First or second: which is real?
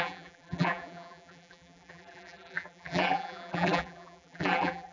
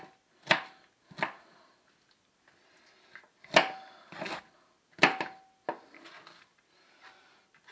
second